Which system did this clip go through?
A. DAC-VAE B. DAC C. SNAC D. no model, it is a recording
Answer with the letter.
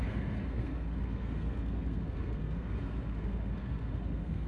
C